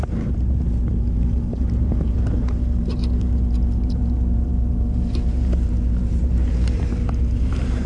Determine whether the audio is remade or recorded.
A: remade